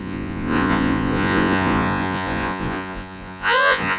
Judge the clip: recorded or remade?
remade